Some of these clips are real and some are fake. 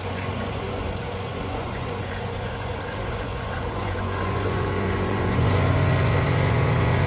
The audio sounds fake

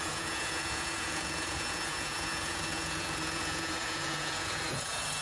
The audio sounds fake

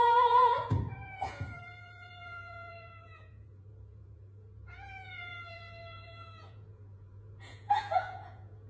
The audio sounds fake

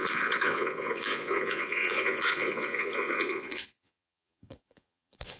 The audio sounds fake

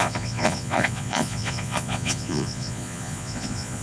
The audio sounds fake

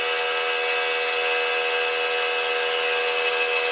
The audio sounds real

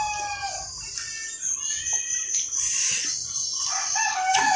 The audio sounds real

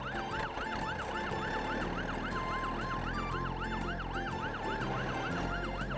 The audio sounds real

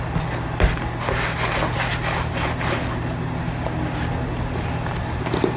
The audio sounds real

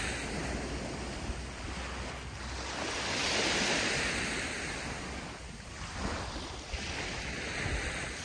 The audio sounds real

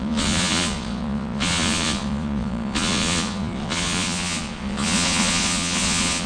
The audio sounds fake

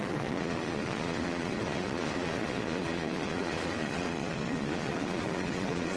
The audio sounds fake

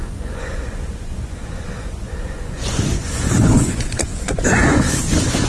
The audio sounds fake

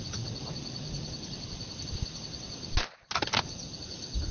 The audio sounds real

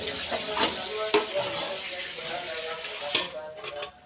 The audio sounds real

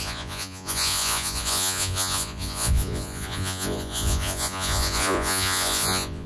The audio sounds fake